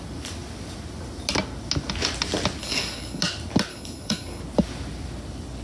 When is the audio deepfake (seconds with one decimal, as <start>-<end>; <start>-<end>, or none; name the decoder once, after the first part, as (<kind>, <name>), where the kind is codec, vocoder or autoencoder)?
2.6-3.2 (codec, DAC); 3.7-4.4